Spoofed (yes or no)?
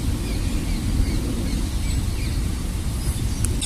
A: no